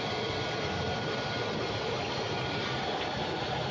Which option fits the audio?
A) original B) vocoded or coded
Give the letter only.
A